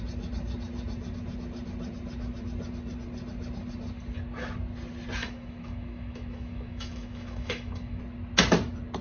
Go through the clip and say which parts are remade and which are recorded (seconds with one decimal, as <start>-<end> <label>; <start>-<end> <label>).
0.0-5.2 recorded; 5.2-8.0 remade; 8.0-9.0 recorded